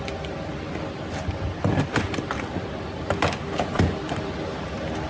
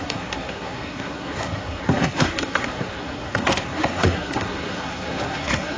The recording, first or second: first